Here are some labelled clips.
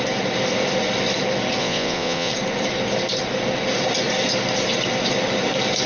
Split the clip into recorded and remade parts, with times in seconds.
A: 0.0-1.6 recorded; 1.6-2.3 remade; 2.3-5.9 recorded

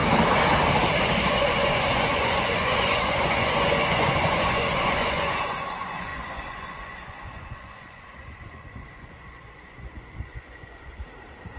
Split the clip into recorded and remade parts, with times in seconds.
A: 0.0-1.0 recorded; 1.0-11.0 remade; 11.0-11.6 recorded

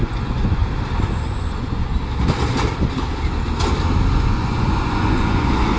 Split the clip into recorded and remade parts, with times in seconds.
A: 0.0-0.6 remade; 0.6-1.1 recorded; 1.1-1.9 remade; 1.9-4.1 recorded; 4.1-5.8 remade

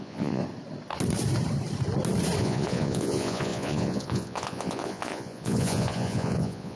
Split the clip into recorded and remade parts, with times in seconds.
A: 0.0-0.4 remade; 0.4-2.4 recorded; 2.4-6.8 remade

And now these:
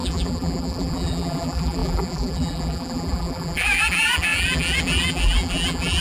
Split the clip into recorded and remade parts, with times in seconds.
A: 0.0-6.0 remade

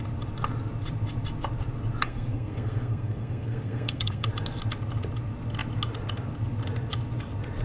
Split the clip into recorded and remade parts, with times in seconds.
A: 0.0-2.0 recorded; 2.0-4.3 remade; 4.3-7.6 recorded